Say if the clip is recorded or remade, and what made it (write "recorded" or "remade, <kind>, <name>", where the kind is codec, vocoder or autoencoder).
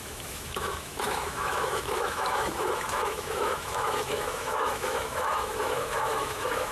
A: remade, autoencoder, DAC-VAE